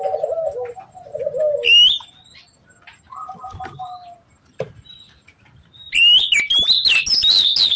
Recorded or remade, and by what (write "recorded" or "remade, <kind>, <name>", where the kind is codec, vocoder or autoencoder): recorded